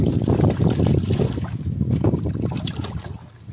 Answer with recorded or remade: recorded